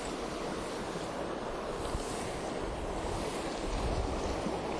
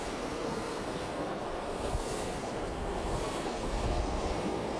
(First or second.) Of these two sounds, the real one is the first